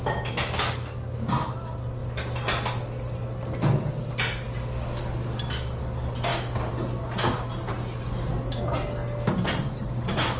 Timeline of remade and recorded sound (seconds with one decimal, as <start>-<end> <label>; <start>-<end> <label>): 0.0-10.4 recorded